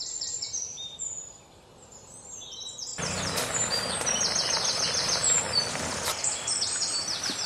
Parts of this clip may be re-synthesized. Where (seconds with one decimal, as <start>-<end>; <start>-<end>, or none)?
0.0-2.9; 5.7-7.5